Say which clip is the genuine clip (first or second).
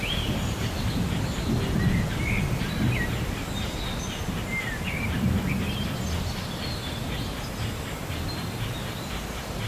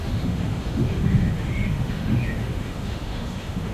first